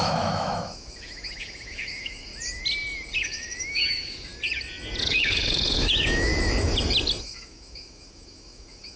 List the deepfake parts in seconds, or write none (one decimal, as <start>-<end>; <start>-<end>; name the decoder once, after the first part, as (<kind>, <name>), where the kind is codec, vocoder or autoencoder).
0.0-2.3 (autoencoder, DAC-VAE); 3.2-4.3; 5.0-6.3; 7.2-9.0